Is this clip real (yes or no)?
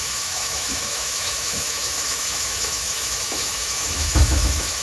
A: no